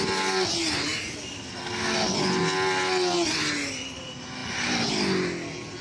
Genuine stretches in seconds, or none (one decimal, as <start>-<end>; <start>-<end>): 0.0-5.8